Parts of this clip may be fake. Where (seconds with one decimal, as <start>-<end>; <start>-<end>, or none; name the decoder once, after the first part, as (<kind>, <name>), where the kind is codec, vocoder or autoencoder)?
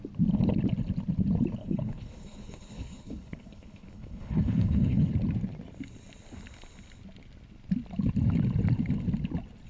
1.6-5.1 (codec, HILCodec)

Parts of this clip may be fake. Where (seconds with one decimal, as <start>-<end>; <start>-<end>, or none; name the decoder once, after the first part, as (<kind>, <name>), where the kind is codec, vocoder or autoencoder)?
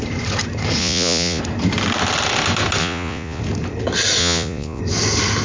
0.8-1.4 (vocoder, Vocos); 2.8-3.4; 4.2-4.8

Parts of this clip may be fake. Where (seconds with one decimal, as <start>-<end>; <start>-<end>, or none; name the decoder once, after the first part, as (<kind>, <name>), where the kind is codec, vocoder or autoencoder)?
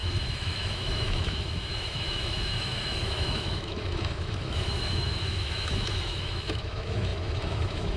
0.0-8.0 (autoencoder, DAC-VAE)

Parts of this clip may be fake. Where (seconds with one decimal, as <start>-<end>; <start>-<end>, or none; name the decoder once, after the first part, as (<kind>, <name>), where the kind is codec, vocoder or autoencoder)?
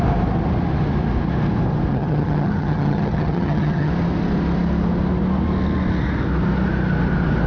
1.9-3.9 (vocoder, HiFi-GAN)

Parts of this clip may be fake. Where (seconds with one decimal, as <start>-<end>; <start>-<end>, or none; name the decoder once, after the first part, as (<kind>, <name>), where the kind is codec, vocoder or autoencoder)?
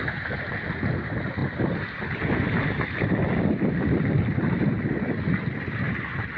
none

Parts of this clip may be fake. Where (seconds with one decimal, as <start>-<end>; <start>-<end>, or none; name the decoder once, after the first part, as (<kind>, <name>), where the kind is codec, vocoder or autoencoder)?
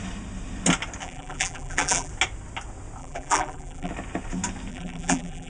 1.0-2.1 (vocoder, BigVGAN v2); 3.0-3.9; 4.7-5.5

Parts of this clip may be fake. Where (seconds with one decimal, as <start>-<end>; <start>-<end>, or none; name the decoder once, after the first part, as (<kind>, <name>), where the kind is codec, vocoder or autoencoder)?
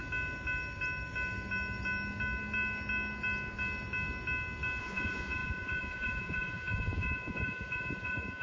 4.8-8.4 (vocoder, Vocos)